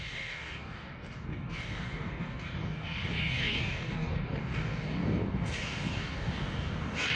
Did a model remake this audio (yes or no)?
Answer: yes